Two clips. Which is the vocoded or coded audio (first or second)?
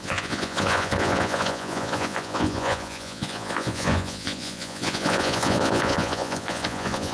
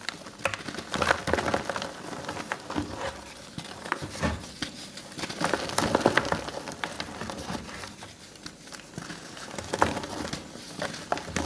first